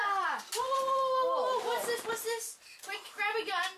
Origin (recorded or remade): recorded